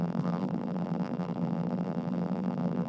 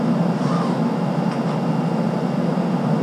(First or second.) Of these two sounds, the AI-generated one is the first